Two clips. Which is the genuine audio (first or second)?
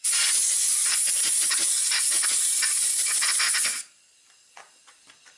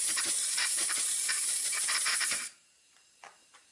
first